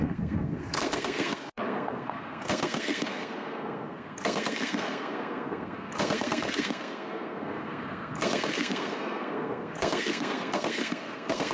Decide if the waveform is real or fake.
fake